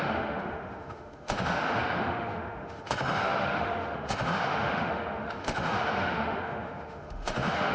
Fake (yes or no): yes